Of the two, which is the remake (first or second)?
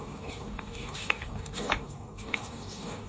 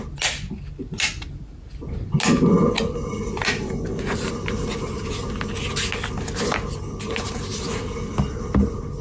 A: first